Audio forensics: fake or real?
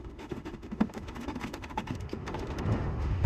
fake